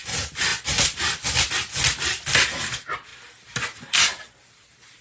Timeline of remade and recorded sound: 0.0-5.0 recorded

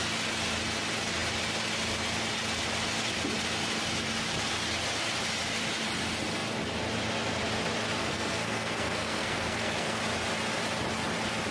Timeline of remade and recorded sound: 0.0-8.0 recorded; 8.0-10.0 remade; 10.0-11.5 recorded